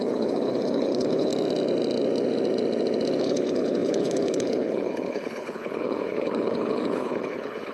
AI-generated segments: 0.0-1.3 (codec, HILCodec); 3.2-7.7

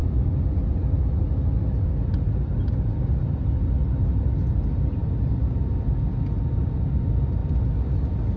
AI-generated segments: none

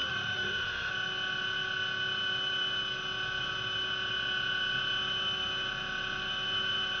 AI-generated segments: 0.0-0.9 (autoencoder, DAC-VAE)

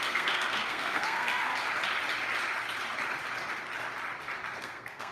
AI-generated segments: 0.0-1.5 (codec, SNAC); 4.6-5.1